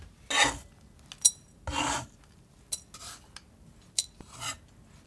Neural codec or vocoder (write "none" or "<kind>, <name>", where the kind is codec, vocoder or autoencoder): none